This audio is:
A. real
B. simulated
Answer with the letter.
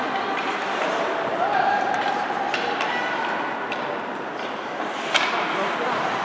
A